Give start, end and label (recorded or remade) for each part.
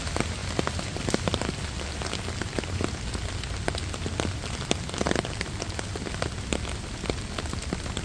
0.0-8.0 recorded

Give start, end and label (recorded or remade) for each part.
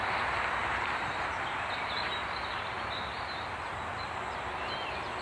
0.0-5.2 recorded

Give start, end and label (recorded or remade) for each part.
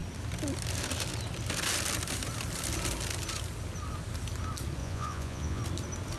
0.0-4.8 recorded; 4.8-5.6 remade; 5.6-6.2 recorded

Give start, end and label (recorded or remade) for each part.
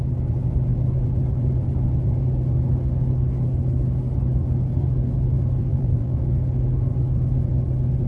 0.0-5.7 recorded; 5.7-6.2 remade; 6.2-8.1 recorded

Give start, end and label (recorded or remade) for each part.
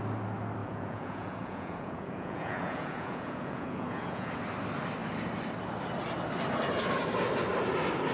0.0-0.6 recorded; 0.6-4.3 remade; 4.3-8.1 recorded